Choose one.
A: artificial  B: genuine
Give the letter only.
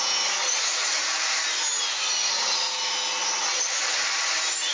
B